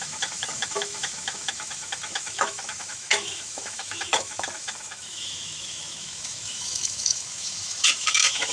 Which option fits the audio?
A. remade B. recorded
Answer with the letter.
A